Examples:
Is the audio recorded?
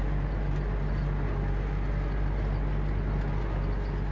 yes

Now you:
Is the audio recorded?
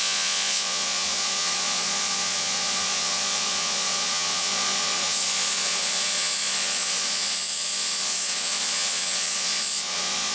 no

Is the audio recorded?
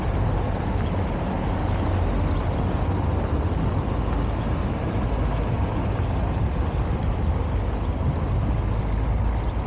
yes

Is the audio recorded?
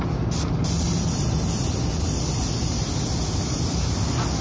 yes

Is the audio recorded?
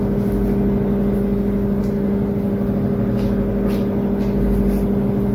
yes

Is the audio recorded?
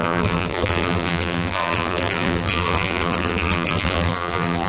no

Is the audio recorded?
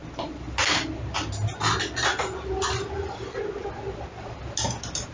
yes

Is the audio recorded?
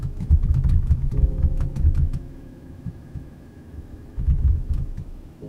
no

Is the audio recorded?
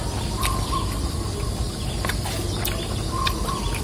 yes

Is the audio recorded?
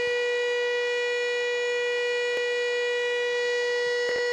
yes